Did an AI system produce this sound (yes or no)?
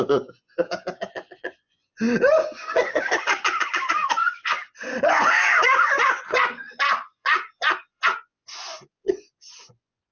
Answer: yes